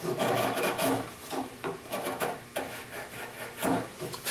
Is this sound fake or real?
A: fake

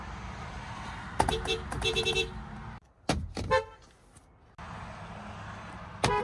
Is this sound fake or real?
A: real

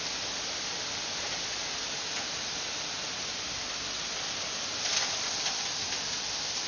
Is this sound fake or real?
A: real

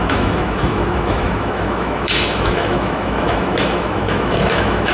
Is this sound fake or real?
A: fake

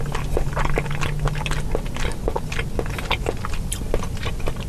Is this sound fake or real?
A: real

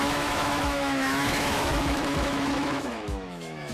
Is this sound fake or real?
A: fake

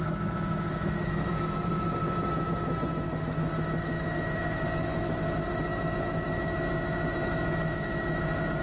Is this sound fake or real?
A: fake